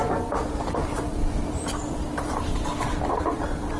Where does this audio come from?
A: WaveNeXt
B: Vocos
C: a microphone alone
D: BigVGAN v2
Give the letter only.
C